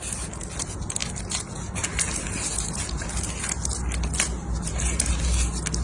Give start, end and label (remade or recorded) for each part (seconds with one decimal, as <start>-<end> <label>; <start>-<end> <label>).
0.0-5.8 recorded